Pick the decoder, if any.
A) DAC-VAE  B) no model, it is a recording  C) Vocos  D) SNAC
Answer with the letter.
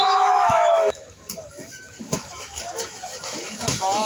A